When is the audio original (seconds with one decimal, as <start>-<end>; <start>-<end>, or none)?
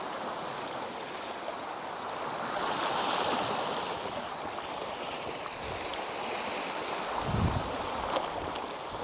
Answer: 0.0-9.0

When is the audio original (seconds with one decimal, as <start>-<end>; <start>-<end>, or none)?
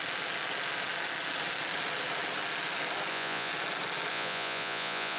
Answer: 0.0-3.1; 3.5-4.1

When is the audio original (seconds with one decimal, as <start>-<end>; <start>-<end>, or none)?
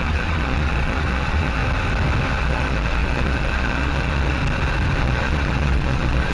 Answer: 1.6-2.4; 4.4-5.0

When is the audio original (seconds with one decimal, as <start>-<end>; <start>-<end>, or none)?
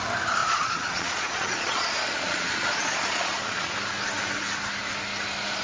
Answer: 0.0-0.4; 3.7-5.6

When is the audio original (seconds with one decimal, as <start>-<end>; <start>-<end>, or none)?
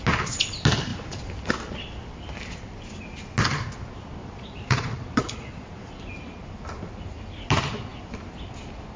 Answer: 0.0-4.2; 6.0-9.0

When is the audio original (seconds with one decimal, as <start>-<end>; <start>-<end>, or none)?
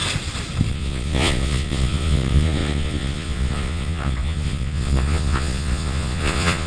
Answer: 0.0-0.7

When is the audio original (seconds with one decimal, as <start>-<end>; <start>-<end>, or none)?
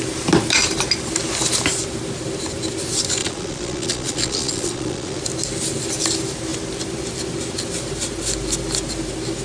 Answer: 0.0-3.2; 5.2-9.4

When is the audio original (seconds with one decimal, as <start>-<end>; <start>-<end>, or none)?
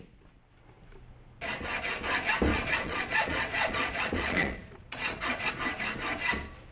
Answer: 0.0-2.5; 5.5-6.7